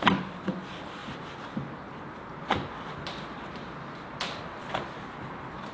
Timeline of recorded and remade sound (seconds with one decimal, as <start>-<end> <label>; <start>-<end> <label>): 0.0-5.7 recorded